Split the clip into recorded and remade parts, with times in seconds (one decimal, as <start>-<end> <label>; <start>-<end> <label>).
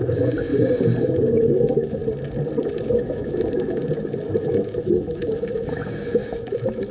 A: 0.0-0.5 remade; 0.5-1.0 recorded; 1.0-2.0 remade; 2.0-2.6 recorded; 2.6-3.8 remade; 3.8-4.4 recorded; 4.4-6.9 remade